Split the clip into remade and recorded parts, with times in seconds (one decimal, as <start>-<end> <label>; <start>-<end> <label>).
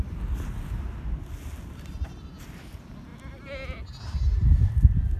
0.0-5.2 recorded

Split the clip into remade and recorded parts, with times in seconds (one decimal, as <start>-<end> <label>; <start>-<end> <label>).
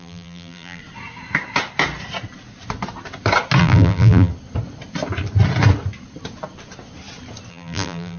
0.0-0.8 remade; 0.8-3.6 recorded; 3.6-4.3 remade; 4.3-7.5 recorded; 7.5-8.2 remade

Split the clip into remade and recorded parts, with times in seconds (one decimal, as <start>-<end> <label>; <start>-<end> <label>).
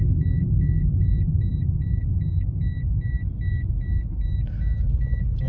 0.0-5.5 recorded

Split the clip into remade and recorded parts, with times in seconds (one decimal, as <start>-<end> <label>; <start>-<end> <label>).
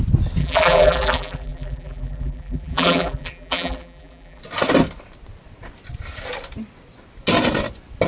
0.0-0.4 recorded; 0.4-4.4 remade; 4.4-8.1 recorded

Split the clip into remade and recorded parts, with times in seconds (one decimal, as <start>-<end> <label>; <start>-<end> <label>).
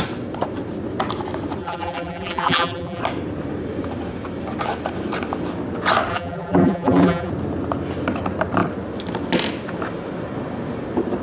0.0-1.6 recorded; 1.6-3.0 remade; 3.0-6.1 recorded; 6.1-7.3 remade; 7.3-11.2 recorded